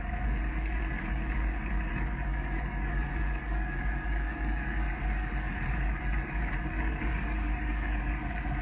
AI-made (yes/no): yes